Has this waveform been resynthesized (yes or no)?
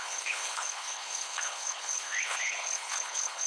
yes